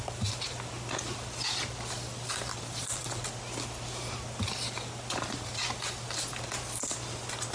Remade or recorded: recorded